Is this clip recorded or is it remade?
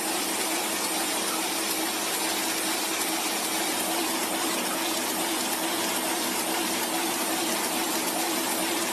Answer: recorded